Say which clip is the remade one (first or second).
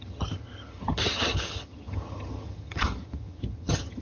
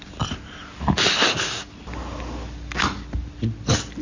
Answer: first